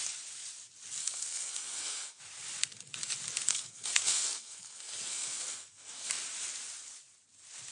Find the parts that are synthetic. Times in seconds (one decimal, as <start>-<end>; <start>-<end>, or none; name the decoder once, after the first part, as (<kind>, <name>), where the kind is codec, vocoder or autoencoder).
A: 1.0-2.2 (codec, SNAC); 3.5-6.1